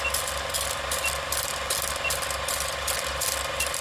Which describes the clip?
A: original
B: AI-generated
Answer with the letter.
A